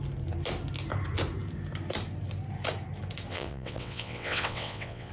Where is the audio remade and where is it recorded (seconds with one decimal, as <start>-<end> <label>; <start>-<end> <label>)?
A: 0.0-3.3 recorded; 3.3-5.1 remade